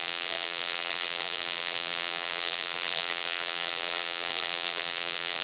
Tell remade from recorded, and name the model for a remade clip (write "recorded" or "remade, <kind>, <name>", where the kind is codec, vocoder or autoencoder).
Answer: remade, vocoder, BigVGAN v2